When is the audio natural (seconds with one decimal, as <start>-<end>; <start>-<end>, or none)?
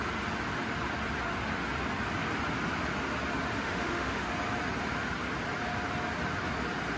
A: 0.0-3.6; 4.3-7.0